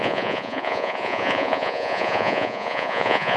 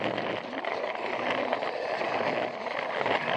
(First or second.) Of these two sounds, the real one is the second